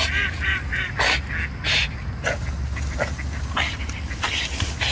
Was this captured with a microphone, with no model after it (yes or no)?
yes